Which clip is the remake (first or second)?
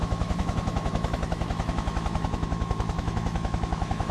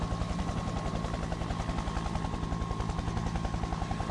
first